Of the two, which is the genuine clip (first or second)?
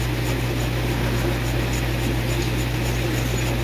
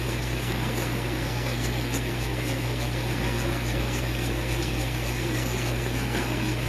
first